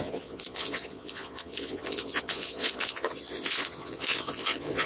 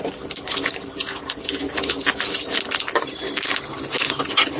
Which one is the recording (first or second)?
second